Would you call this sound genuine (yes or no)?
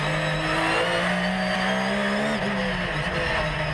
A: yes